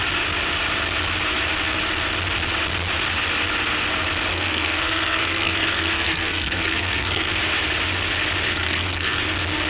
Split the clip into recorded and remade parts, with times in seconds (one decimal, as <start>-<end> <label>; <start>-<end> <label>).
0.0-4.3 recorded; 4.3-7.3 remade; 7.3-8.5 recorded; 8.5-9.2 remade; 9.2-9.7 recorded